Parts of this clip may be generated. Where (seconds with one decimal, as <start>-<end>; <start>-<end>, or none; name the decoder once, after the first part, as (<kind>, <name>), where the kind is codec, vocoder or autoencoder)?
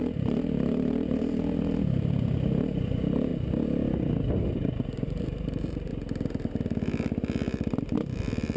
0.0-3.3 (vocoder, BigVGAN v2); 4.5-5.9